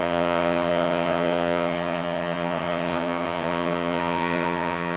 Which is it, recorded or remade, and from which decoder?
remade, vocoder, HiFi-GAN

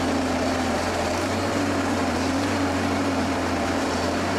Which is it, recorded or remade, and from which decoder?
remade, vocoder, BigVGAN v2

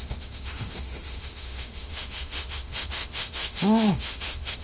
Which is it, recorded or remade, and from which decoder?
remade, autoencoder, DAC-VAE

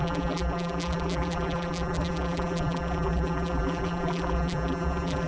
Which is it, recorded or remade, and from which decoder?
remade, vocoder, BigVGAN v2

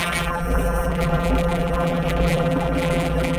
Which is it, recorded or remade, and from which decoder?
remade, vocoder, BigVGAN v2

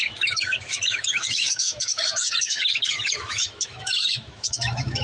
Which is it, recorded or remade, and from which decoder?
remade, autoencoder, DAC-VAE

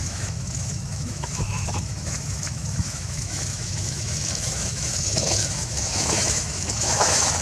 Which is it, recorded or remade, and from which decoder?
remade, autoencoder, DAC-VAE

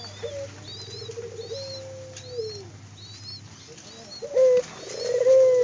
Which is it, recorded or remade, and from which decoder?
recorded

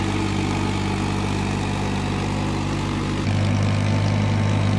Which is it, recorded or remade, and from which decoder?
recorded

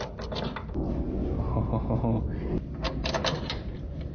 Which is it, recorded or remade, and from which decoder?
recorded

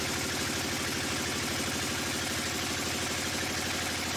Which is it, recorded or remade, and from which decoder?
recorded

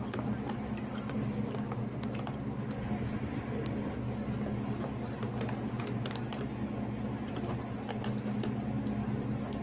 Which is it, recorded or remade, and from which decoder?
recorded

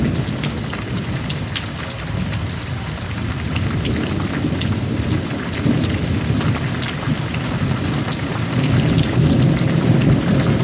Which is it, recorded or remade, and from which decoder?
recorded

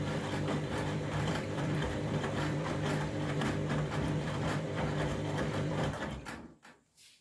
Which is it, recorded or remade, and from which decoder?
remade, vocoder, BigVGAN v2